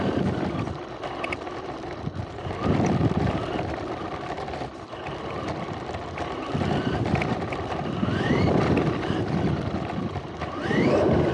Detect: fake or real fake